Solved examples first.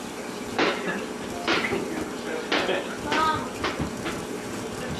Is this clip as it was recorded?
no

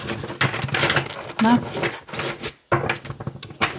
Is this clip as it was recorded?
yes